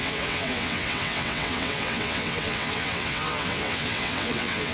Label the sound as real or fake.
fake